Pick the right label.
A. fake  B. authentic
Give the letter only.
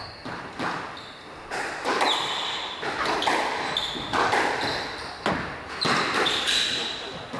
B